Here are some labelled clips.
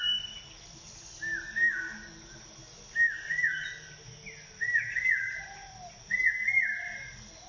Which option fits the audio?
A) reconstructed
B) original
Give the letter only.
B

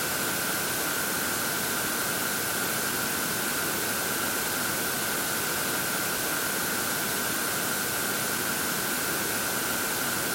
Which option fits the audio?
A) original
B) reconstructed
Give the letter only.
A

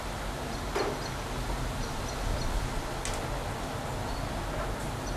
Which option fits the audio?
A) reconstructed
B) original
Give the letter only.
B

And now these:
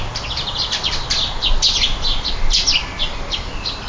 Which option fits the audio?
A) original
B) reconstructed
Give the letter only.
A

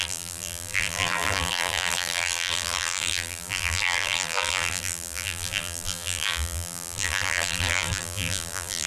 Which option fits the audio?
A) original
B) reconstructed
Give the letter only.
B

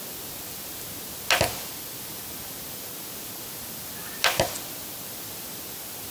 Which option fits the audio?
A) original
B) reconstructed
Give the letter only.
A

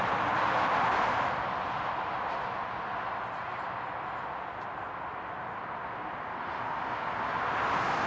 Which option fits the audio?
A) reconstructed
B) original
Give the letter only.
B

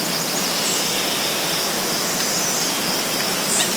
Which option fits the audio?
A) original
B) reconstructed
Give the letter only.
A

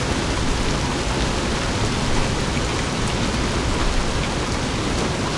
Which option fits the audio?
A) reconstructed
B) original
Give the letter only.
B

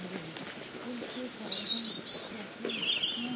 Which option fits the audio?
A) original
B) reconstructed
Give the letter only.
A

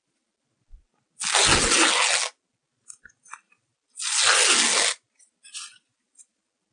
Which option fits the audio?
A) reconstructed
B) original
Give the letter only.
B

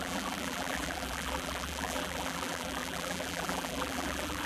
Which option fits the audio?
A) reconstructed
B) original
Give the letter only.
A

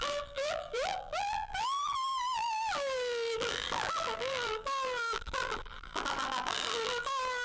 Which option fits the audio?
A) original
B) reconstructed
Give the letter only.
B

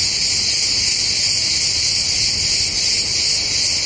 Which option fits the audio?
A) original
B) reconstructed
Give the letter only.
A